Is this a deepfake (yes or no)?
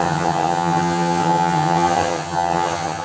yes